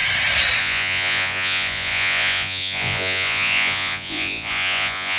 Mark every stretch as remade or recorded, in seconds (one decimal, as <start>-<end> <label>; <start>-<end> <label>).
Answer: 0.0-0.6 recorded; 0.6-5.2 remade